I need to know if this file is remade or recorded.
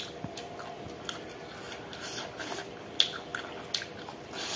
recorded